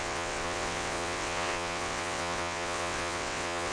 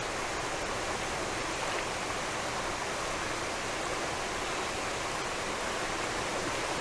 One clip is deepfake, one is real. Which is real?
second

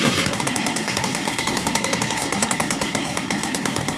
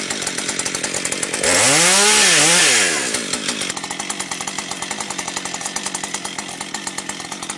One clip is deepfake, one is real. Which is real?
second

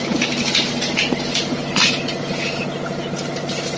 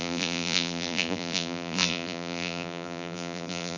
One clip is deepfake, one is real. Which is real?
first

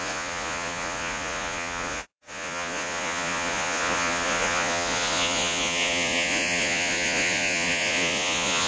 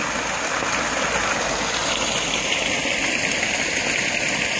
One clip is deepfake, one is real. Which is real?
second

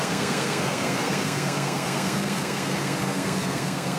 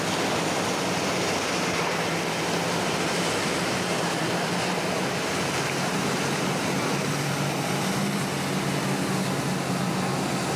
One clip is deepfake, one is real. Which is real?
second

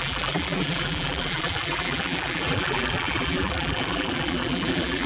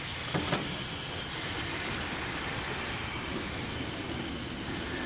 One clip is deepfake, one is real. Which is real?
second